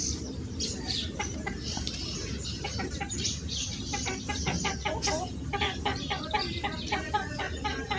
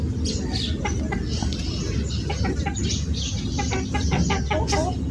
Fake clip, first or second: first